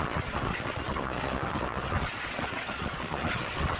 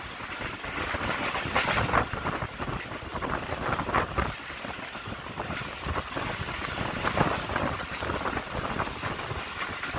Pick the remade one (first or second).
first